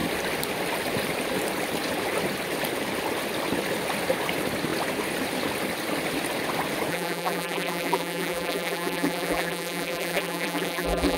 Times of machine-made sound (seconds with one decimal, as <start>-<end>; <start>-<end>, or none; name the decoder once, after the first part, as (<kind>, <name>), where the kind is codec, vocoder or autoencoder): 6.9-11.2 (vocoder, BigVGAN v2)